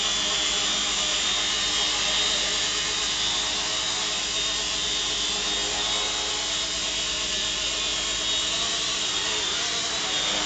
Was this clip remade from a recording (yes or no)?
no